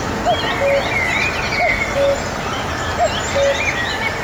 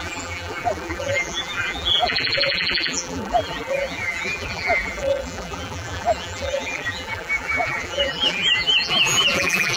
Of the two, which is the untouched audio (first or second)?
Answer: first